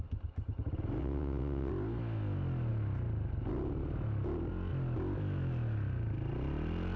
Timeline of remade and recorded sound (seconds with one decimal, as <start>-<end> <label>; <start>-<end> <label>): 0.0-1.0 recorded; 1.0-1.7 remade; 1.7-7.0 recorded